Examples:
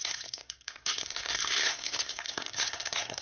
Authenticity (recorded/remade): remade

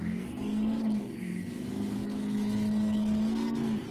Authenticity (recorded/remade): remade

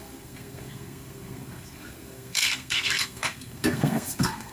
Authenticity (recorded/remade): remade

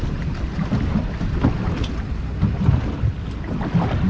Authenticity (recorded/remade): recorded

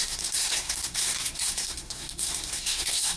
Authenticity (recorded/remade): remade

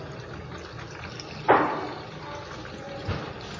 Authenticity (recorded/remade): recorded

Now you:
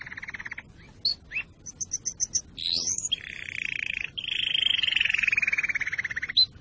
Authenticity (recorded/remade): recorded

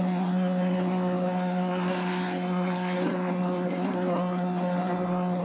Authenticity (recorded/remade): remade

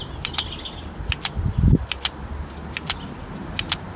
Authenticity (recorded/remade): recorded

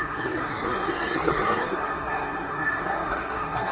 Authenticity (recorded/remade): remade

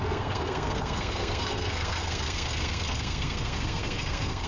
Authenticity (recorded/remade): remade